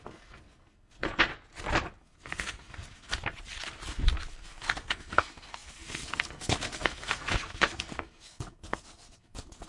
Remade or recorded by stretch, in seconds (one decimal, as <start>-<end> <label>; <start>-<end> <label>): 0.0-1.3 remade; 1.3-2.0 recorded; 2.0-3.1 remade; 3.1-4.3 recorded; 4.3-9.7 remade